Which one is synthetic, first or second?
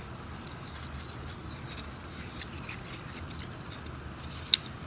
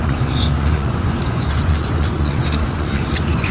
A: second